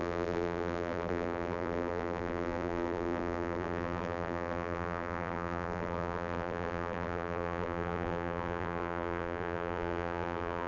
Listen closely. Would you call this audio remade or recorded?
remade